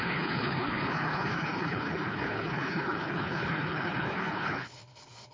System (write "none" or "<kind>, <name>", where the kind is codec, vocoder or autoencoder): codec, HILCodec